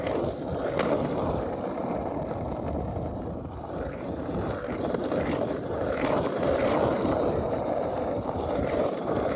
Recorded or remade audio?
remade